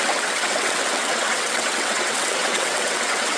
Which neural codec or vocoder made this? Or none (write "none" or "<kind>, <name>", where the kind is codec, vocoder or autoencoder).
vocoder, WaveNeXt